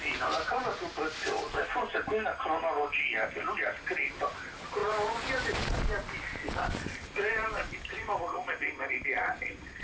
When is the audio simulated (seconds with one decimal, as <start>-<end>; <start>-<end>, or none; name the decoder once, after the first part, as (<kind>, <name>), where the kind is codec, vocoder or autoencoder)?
none